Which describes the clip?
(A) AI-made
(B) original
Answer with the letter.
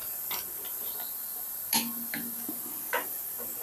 B